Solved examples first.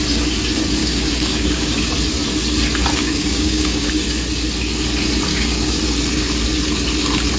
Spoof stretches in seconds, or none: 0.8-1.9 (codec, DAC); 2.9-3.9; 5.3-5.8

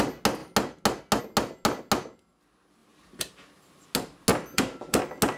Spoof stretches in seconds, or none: 2.8-3.7 (vocoder, BigVGAN v2); 4.3-5.0

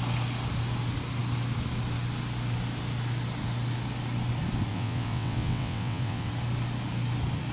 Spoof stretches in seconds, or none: 4.7-6.3 (vocoder, WaveNeXt)

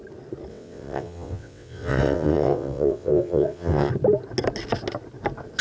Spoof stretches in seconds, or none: 0.5-3.9 (vocoder, WaveNeXt)